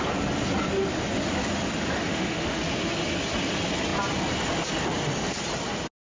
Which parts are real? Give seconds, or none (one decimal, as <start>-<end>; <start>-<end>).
0.0-2.1; 2.6-6.1

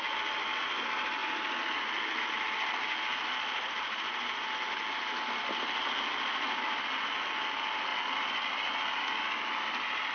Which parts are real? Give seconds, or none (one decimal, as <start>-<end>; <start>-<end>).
0.0-10.1

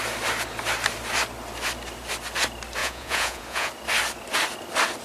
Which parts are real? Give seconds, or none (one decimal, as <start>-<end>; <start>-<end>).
0.0-2.8; 3.7-5.0